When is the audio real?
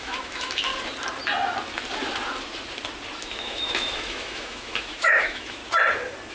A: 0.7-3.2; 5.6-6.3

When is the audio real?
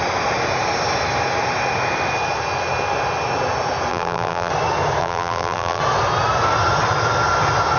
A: 0.0-3.9; 4.5-5.0; 5.8-7.8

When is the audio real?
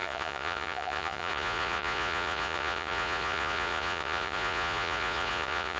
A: none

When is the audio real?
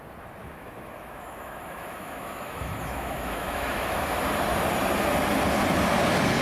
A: 0.0-0.4; 4.2-6.4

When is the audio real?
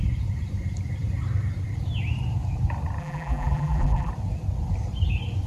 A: 0.0-3.0; 4.1-5.5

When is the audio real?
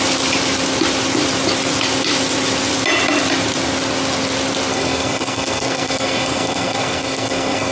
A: 0.0-4.7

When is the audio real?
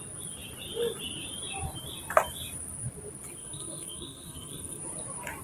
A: 0.0-3.4; 4.8-5.4